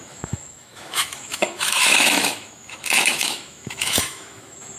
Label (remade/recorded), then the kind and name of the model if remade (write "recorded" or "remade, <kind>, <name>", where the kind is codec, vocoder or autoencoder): remade, autoencoder, DAC-VAE